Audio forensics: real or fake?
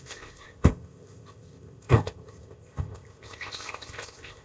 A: fake